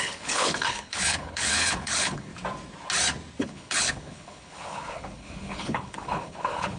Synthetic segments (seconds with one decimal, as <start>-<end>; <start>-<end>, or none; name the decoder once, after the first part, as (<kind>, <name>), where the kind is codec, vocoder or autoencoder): 0.0-2.3 (codec, HILCodec); 3.4-6.8